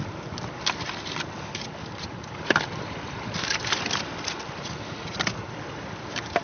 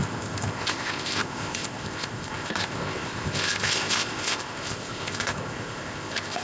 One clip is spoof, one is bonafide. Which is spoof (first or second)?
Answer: second